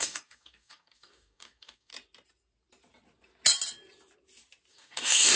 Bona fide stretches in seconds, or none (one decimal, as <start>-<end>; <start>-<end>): 1.9-4.7